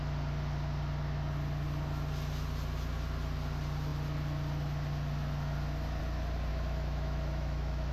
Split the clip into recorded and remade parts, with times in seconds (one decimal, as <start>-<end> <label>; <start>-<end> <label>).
0.0-6.5 recorded; 6.5-7.9 remade